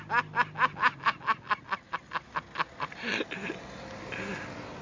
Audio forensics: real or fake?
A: real